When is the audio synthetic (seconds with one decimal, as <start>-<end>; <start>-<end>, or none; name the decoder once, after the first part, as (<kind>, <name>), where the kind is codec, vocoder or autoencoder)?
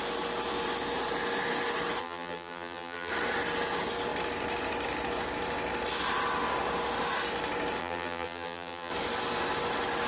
2.0-3.1 (vocoder, BigVGAN v2); 7.8-8.9